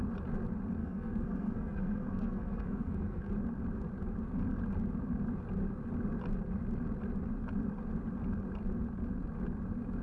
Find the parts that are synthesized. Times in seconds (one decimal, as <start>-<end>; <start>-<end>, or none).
0.8-3.3